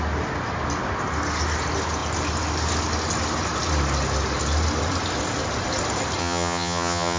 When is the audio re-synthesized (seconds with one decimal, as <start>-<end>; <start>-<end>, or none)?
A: 6.2-7.2